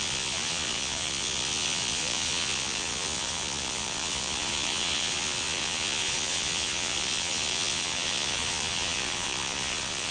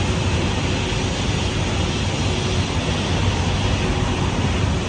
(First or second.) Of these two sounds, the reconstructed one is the first